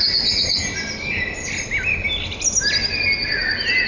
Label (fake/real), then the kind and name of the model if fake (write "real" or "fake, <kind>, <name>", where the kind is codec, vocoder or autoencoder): real